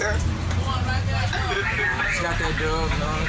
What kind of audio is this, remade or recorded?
recorded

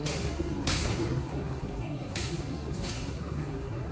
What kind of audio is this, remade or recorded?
remade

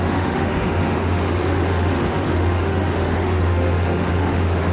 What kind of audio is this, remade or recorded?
remade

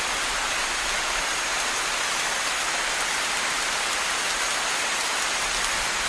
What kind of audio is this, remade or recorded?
recorded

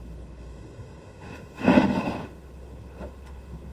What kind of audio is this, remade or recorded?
remade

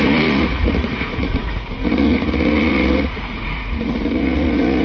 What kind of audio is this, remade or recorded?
remade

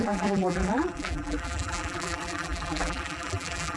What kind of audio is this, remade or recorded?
remade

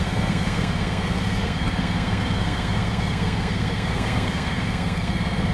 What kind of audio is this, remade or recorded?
remade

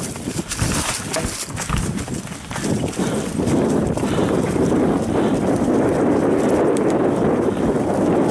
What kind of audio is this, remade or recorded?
recorded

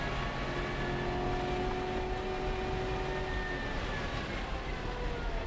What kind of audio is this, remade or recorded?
recorded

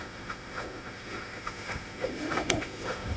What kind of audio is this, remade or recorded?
remade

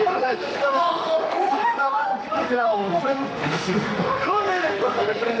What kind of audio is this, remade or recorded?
remade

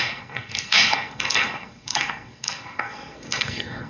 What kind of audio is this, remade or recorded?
remade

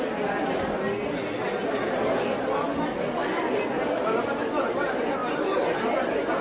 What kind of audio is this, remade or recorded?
recorded